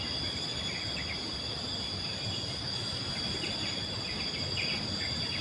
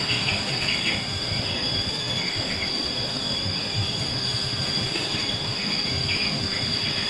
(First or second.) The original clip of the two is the first